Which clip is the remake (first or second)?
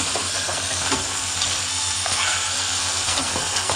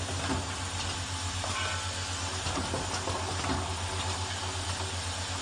first